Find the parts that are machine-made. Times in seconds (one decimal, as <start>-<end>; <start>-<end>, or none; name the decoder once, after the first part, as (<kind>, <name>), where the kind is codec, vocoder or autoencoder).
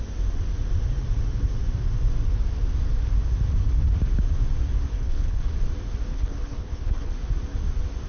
4.9-5.5 (codec, HILCodec); 6.1-7.1